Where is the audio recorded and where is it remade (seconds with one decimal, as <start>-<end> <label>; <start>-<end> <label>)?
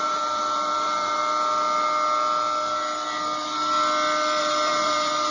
0.0-1.2 remade; 1.2-4.4 recorded; 4.4-5.3 remade